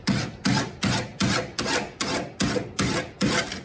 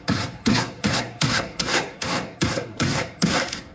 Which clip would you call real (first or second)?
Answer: first